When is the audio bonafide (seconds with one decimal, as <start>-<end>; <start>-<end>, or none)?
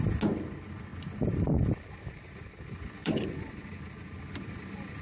0.0-3.0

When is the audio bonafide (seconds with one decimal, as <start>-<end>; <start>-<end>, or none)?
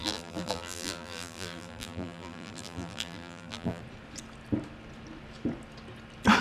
3.8-6.4